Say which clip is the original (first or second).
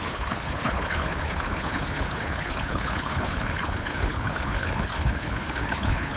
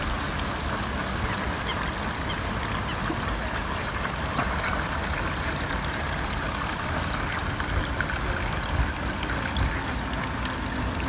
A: second